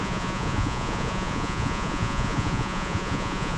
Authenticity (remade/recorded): remade